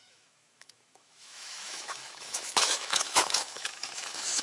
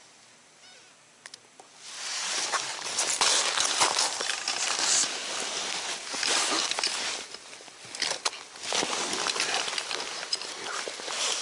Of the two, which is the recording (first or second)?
second